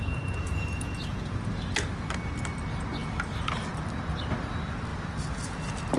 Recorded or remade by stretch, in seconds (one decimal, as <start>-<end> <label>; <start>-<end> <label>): 0.0-1.5 remade; 1.5-6.0 recorded